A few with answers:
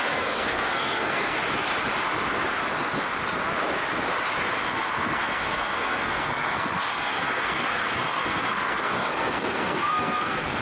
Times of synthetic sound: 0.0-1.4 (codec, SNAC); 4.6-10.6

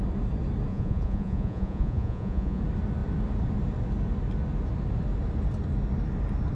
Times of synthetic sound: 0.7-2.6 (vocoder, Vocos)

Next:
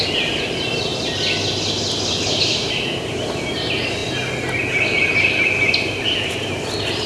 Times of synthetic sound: 0.0-0.9 (vocoder, BigVGAN v2); 2.3-4.0; 5.7-7.1

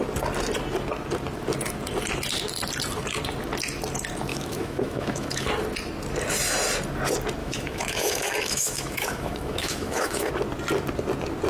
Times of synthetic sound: 4.3-5.5 (autoencoder, DAC-VAE); 7.4-10.3

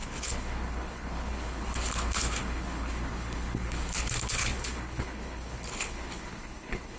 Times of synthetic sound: 0.0-7.0 (codec, HILCodec)

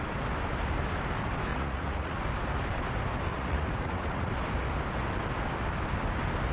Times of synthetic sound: 1.5-2.2 (vocoder, Vocos); 3.3-4.3

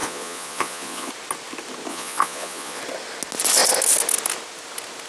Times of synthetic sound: 0.0-1.1 (vocoder, Vocos); 1.9-2.8

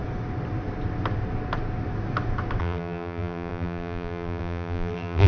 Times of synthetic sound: 2.6-5.3 (vocoder, BigVGAN v2)